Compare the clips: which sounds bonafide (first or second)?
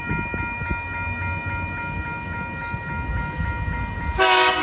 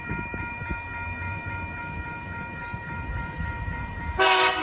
first